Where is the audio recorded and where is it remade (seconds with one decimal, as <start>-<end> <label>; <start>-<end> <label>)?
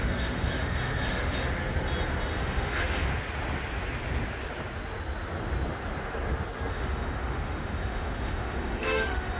0.0-1.5 remade; 1.5-2.4 recorded; 2.4-3.1 remade; 3.1-6.7 recorded; 6.7-9.4 remade